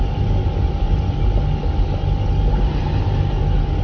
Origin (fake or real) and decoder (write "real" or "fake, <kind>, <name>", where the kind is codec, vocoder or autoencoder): real